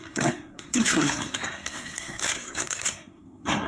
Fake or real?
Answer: fake